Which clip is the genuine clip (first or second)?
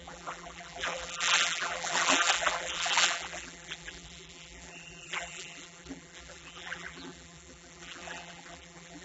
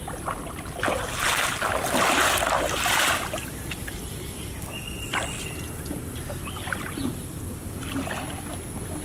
second